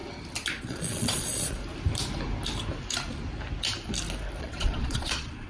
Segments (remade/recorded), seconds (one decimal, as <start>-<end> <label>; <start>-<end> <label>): 0.0-0.6 recorded; 0.6-1.6 remade; 1.6-4.4 recorded; 4.4-5.5 remade